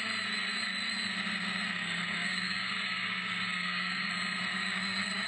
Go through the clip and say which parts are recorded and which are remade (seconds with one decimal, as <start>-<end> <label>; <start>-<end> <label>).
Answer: 0.0-1.8 recorded; 1.8-4.1 remade; 4.1-4.5 recorded; 4.5-5.3 remade